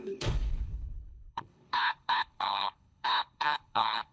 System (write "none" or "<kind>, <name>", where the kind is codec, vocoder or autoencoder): codec, HILCodec